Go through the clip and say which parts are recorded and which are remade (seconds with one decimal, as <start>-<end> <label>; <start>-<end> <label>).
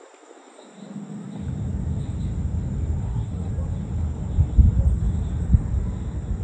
0.0-3.0 recorded; 3.0-3.5 remade; 3.5-6.4 recorded